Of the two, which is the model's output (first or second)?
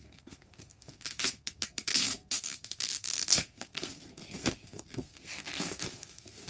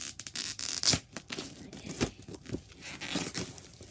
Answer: first